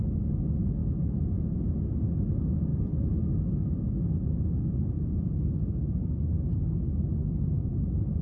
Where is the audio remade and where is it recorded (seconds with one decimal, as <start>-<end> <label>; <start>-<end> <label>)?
0.0-2.7 recorded; 2.7-5.8 remade; 5.8-8.2 recorded